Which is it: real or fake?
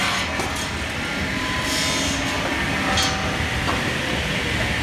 real